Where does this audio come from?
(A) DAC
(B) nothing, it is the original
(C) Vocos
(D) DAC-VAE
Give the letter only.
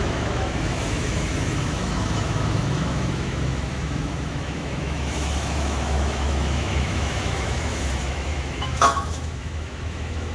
D